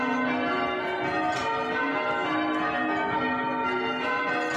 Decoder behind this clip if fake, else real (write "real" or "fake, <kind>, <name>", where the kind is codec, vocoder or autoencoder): real